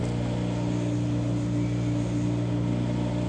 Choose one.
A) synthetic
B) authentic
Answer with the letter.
B